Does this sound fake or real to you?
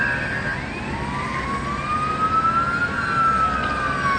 real